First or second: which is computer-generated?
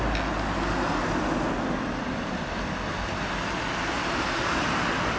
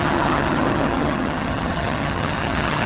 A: second